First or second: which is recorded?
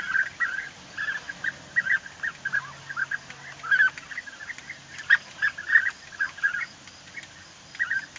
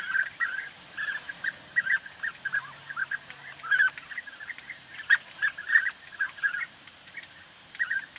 first